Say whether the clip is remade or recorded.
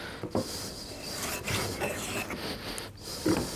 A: recorded